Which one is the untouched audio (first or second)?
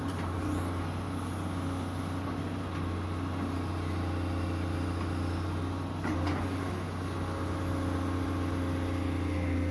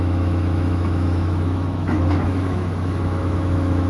first